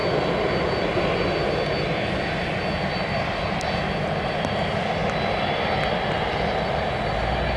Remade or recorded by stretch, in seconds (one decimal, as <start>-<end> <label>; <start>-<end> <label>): 0.0-7.6 recorded